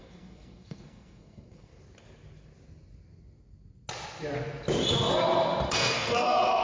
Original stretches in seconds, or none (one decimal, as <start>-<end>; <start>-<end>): 1.7-5.7